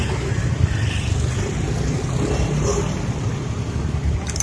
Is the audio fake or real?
real